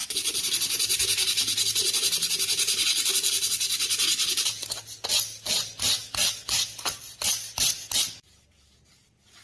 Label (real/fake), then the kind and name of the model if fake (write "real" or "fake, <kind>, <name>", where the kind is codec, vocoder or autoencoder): real